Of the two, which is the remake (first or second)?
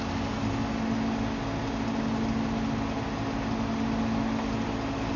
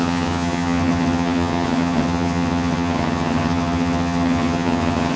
second